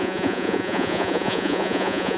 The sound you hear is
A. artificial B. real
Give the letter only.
A